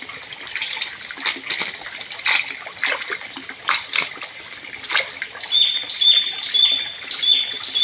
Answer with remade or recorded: recorded